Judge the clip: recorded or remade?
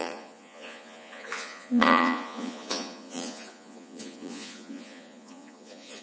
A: remade